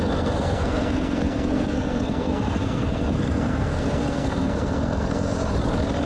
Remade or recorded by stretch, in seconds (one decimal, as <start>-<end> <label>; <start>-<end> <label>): 0.0-5.3 remade; 5.3-6.1 recorded